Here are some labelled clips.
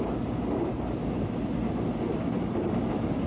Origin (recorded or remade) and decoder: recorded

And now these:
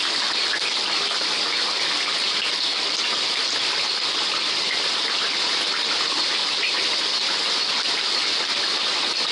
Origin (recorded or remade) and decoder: recorded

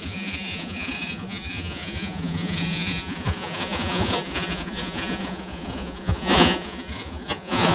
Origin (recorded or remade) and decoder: remade, vocoder, Vocos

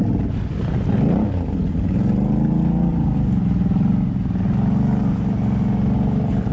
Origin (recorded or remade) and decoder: recorded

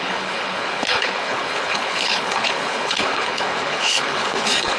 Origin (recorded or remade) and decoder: remade, codec, HILCodec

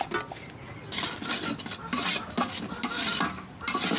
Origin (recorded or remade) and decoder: recorded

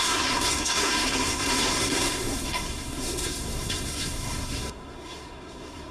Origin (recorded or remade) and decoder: remade, codec, SNAC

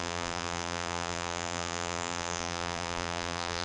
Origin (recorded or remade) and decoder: remade, vocoder, BigVGAN v2